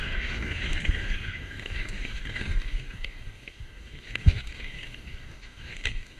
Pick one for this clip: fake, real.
fake